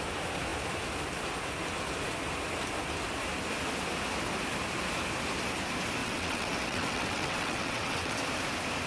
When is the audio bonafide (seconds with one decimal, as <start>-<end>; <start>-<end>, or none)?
0.0-6.0; 8.2-8.9